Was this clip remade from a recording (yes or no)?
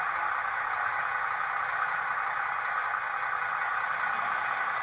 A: no